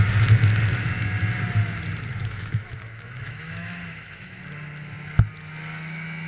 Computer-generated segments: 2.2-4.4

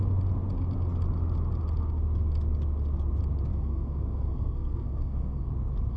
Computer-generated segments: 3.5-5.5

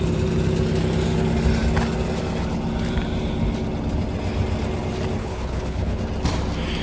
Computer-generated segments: 5.2-6.0

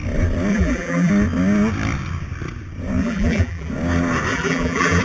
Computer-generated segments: 0.5-1.1; 3.0-3.7; 4.3-5.0

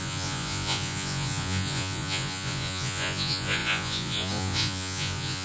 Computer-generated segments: 0.0-5.4

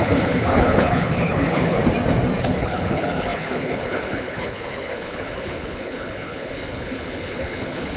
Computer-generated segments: 0.0-1.8; 2.4-8.0

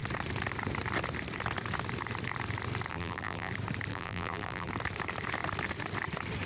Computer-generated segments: 2.9-3.5; 3.9-4.7

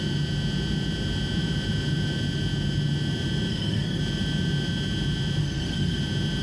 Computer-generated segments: 3.5-4.0; 5.4-6.0